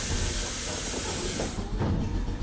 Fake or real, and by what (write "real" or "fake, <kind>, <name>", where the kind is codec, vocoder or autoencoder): real